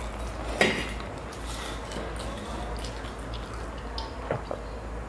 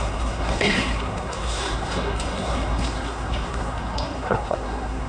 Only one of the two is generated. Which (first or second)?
second